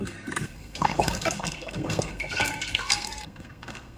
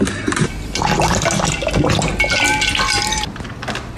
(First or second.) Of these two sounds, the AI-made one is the first